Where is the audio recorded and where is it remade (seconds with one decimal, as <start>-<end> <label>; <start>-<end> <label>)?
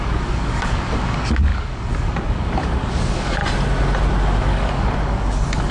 0.0-3.4 remade; 3.4-4.4 recorded; 4.4-5.7 remade